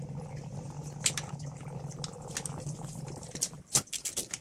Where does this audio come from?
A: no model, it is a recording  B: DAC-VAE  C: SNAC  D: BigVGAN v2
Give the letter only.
A